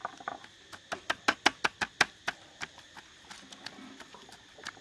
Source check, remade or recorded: recorded